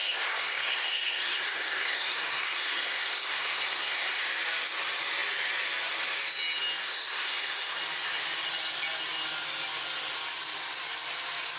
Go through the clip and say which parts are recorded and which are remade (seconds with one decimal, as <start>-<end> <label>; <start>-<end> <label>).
0.0-4.2 remade; 4.2-6.8 recorded; 6.8-7.8 remade; 7.8-11.6 recorded